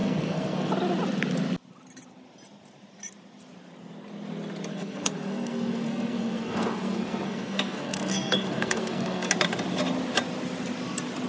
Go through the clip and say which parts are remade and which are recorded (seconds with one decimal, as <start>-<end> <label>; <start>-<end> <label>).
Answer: 0.0-0.7 remade; 0.7-4.7 recorded; 4.7-9.3 remade; 9.3-11.3 recorded